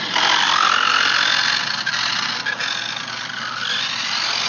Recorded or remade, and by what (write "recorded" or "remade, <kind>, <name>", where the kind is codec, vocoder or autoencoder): recorded